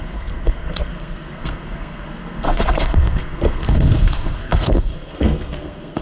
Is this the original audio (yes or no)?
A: no